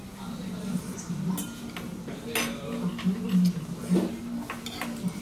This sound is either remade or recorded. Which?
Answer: recorded